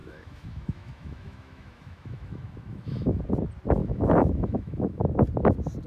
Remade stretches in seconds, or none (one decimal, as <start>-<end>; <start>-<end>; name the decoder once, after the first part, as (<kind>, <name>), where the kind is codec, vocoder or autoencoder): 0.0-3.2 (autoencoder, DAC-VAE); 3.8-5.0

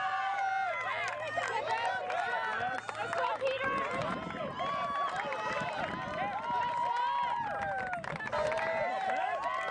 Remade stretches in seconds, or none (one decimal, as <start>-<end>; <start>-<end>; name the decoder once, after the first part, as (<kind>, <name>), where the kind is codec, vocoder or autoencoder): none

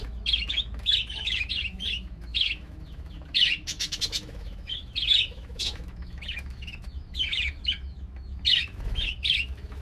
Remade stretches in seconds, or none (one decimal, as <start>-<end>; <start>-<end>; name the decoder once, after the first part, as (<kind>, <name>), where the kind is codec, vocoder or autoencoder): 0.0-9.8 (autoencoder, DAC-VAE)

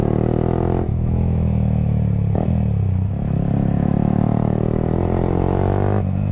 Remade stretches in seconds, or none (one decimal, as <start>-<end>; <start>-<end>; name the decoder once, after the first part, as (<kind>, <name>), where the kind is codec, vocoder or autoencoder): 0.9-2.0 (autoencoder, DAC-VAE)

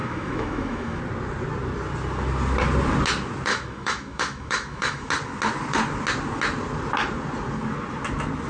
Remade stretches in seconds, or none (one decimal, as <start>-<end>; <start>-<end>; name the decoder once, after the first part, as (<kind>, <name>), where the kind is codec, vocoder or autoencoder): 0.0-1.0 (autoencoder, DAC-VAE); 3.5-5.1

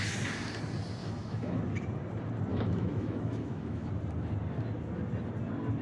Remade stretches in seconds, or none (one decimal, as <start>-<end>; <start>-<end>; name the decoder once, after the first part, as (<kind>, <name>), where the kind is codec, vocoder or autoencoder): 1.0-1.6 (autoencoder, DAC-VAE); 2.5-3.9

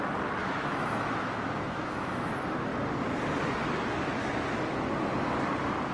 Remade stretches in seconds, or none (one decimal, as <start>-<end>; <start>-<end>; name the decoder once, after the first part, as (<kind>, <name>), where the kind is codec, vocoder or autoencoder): 0.4-2.3 (autoencoder, DAC-VAE)

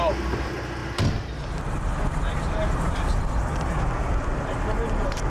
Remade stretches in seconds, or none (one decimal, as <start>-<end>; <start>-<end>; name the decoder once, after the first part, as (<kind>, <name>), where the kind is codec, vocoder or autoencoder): none